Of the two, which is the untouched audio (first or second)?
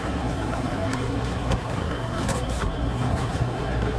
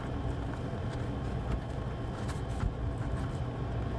second